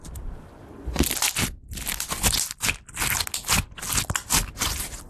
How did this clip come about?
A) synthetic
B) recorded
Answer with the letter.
B